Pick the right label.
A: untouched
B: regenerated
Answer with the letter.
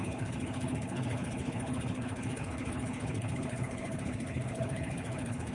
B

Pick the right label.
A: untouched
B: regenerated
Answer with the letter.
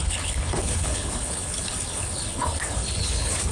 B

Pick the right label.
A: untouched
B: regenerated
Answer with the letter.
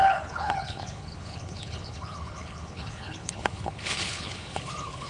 B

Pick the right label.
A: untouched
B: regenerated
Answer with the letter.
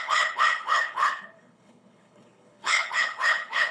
B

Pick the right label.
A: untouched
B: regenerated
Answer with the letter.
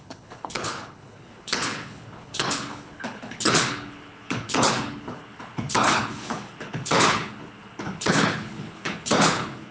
B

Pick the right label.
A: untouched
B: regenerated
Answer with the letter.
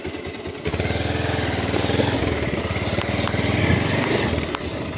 A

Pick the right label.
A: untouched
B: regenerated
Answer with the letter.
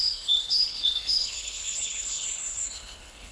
B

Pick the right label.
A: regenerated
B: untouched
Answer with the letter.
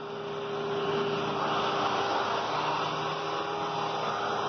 B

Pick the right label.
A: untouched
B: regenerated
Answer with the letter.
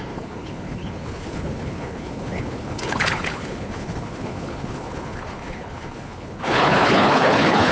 B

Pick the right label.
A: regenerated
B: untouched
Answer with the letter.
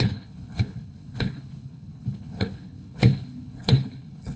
A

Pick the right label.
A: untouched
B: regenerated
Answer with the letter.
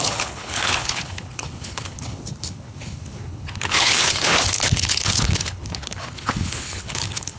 B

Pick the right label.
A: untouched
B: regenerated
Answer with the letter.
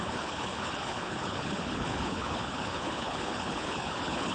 B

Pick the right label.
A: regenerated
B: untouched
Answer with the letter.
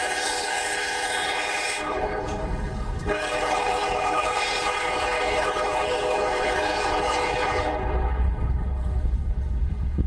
A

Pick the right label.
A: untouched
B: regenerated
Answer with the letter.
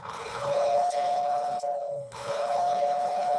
B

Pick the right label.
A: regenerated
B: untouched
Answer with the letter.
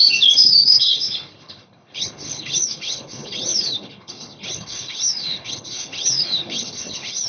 A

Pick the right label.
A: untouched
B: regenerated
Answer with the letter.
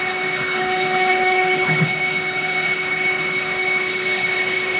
B